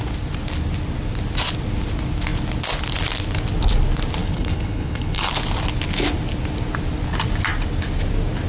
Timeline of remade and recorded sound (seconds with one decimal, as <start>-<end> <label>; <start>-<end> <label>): 0.0-4.2 recorded; 4.2-5.3 remade; 5.3-8.5 recorded